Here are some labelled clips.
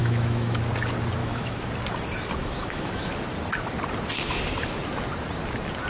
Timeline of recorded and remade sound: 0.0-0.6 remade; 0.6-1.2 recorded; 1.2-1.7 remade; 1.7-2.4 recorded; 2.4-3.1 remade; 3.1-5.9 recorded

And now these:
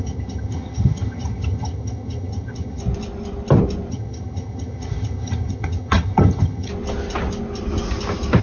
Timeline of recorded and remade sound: 0.0-2.8 remade; 2.8-3.9 recorded; 3.9-6.7 remade; 6.7-8.4 recorded